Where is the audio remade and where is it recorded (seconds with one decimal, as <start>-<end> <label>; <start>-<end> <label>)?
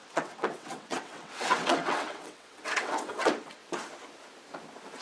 0.0-3.6 remade; 3.6-5.0 recorded